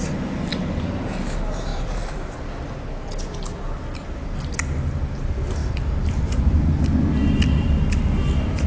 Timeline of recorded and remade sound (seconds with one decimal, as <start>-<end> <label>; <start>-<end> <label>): 0.0-1.7 recorded; 1.7-2.4 remade; 2.4-5.6 recorded; 5.6-6.5 remade; 6.5-8.7 recorded

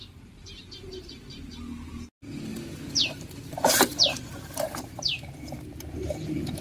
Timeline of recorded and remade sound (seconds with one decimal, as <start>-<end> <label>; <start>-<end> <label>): 0.0-0.4 recorded; 0.4-1.5 remade; 1.5-2.5 recorded; 2.5-6.6 remade

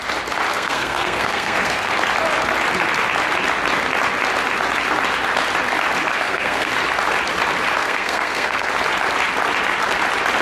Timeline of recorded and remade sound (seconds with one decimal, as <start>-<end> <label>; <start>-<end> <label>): 0.0-0.5 recorded; 0.5-1.9 remade; 1.9-6.1 recorded; 6.1-6.7 remade; 6.7-7.8 recorded; 7.8-8.7 remade; 8.7-10.4 recorded

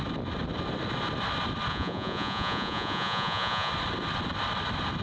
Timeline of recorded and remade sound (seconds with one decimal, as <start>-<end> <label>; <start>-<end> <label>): 0.0-1.7 recorded; 1.7-3.7 remade; 3.7-5.0 recorded

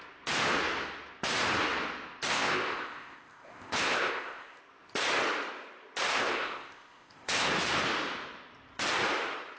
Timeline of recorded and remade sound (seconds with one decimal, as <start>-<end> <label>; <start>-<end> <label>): 0.0-2.3 recorded; 2.3-4.6 remade; 4.6-6.1 recorded; 6.1-7.5 remade; 7.5-9.6 recorded